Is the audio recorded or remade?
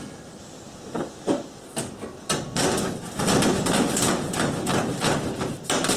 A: recorded